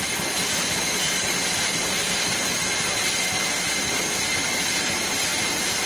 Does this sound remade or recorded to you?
recorded